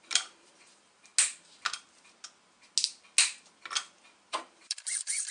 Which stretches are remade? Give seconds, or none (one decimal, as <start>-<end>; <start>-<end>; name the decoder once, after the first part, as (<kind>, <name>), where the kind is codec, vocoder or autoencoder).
0.0-1.1 (vocoder, BigVGAN v2); 4.3-5.3